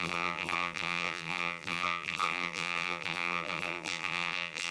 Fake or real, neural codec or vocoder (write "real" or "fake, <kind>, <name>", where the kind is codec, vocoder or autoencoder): fake, vocoder, BigVGAN v2